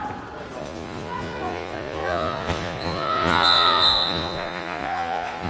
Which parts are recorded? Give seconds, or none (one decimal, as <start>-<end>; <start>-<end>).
0.0-0.6